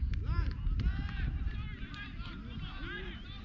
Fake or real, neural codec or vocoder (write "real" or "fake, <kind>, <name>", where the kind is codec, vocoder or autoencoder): real